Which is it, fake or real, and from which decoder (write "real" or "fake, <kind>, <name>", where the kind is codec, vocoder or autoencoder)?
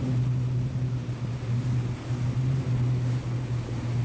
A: real